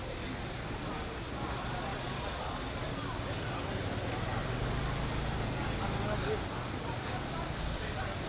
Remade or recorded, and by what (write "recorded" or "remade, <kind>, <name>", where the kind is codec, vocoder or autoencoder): recorded